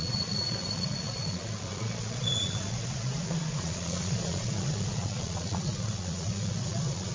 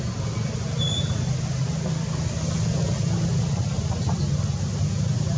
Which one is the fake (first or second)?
first